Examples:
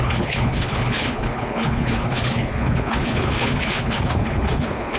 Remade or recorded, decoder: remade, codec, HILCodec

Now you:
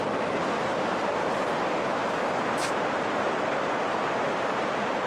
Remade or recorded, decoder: recorded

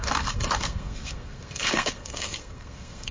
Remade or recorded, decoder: remade, codec, SNAC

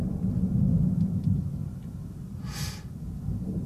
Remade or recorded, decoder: recorded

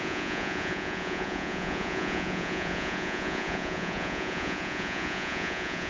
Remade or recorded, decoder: remade, vocoder, Vocos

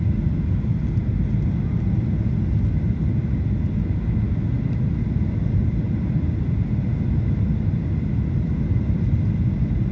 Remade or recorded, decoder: recorded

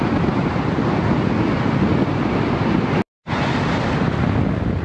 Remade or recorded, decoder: recorded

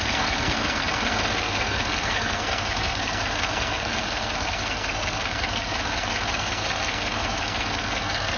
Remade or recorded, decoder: remade, codec, SNAC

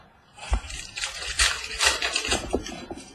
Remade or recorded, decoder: remade, vocoder, BigVGAN v2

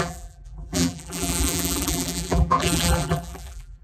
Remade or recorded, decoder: remade, vocoder, BigVGAN v2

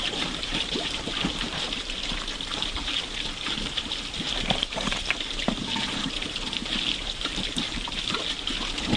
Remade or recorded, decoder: remade, vocoder, BigVGAN v2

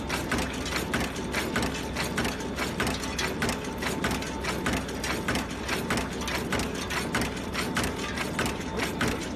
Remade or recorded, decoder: recorded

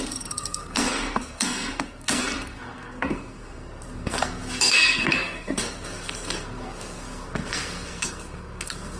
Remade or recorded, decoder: remade, codec, SNAC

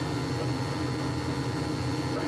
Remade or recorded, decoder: recorded